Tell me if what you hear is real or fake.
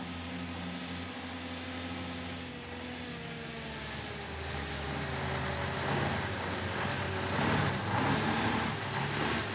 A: real